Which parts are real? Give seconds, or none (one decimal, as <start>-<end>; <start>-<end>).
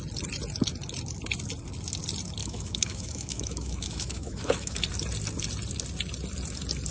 0.0-2.4; 4.8-6.9